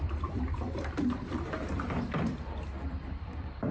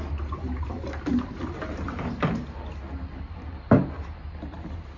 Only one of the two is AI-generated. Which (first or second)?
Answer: first